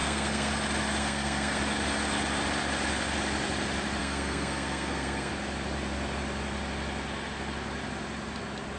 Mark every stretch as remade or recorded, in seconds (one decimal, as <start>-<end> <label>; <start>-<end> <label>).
0.0-0.5 remade; 0.5-1.0 recorded; 1.0-1.6 remade; 1.6-4.0 recorded; 4.0-5.3 remade; 5.3-8.8 recorded